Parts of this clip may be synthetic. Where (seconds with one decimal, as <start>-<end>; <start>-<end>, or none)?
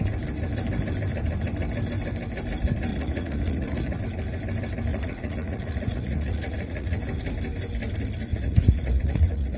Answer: 2.9-4.0; 4.9-7.0; 8.3-9.6